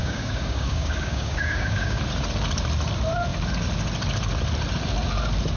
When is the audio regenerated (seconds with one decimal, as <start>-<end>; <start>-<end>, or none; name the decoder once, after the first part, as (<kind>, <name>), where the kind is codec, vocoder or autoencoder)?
0.0-2.0 (codec, DAC)